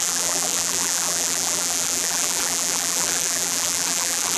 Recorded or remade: remade